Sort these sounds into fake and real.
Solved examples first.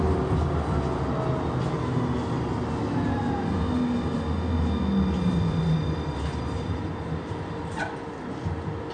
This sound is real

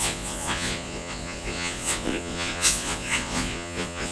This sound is fake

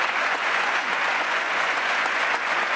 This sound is fake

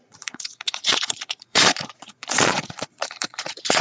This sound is fake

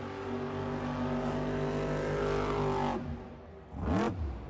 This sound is real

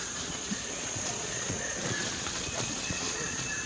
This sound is fake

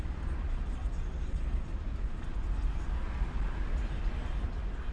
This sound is real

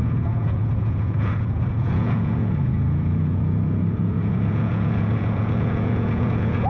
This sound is fake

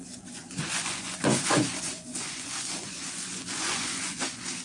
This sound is fake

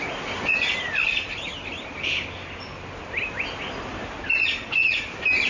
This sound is real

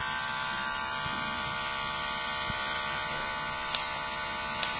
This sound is real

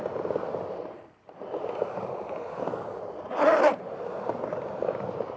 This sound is real